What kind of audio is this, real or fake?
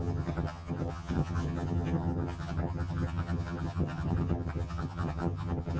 fake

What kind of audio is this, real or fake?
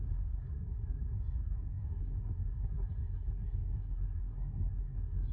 fake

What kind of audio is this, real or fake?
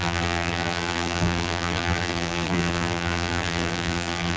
fake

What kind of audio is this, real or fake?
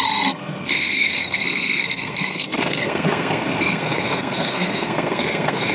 fake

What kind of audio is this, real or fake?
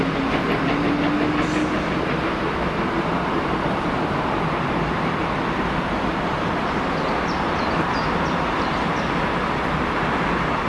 real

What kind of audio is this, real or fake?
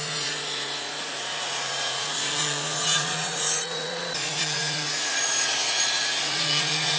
fake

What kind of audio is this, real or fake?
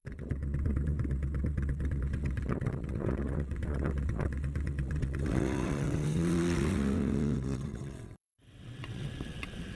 fake